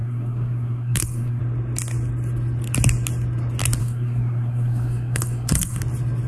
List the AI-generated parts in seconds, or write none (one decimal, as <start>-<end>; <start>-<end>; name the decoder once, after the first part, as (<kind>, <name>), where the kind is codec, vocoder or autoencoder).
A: 0.0-1.4 (codec, SNAC); 3.8-5.8